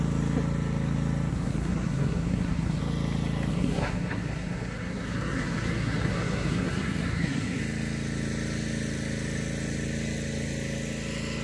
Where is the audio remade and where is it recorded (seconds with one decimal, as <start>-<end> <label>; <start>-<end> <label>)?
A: 0.0-1.3 recorded; 1.3-2.8 remade; 2.8-3.5 recorded; 3.5-7.6 remade; 7.6-11.4 recorded